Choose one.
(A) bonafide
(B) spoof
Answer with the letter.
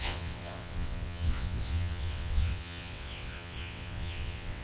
B